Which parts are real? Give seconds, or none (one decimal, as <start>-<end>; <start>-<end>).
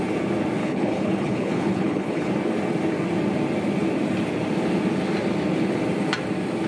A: 0.0-0.6; 2.3-6.7